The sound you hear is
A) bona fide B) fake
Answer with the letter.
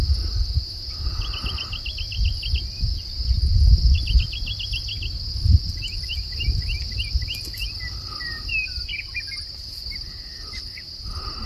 A